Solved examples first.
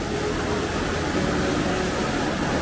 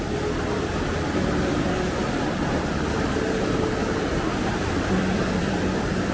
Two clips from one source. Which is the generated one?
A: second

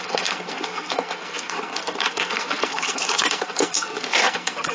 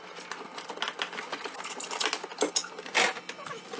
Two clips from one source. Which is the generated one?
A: first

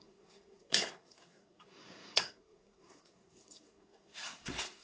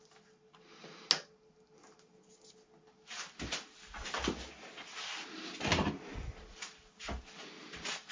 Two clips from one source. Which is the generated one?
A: first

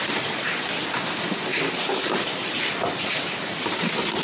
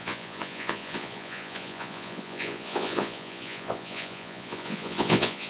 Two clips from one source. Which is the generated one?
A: second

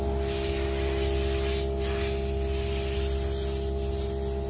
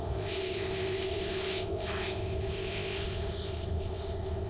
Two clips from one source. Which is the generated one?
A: second